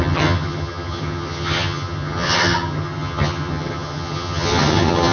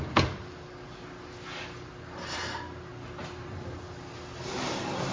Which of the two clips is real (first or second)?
second